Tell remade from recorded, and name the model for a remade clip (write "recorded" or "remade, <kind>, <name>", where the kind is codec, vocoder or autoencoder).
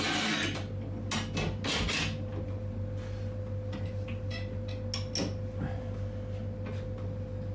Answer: recorded